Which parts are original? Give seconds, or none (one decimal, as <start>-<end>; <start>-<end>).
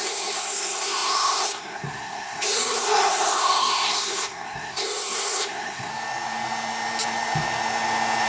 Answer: 5.9-8.3